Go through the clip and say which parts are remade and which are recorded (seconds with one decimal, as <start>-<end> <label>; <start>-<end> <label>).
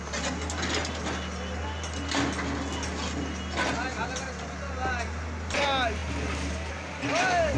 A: 0.0-7.6 recorded